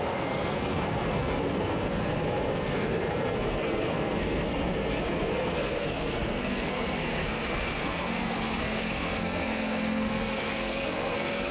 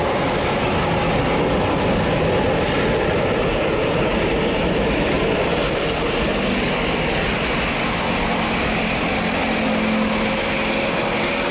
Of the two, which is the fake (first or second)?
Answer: first